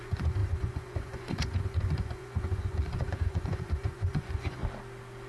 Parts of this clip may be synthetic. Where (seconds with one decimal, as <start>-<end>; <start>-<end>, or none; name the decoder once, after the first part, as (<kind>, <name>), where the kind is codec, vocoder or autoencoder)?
0.0-4.6 (vocoder, Vocos)